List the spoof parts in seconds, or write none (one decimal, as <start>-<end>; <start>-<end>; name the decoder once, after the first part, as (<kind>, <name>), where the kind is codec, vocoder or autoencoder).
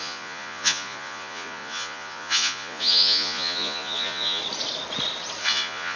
0.0-4.4 (vocoder, Vocos); 5.4-6.0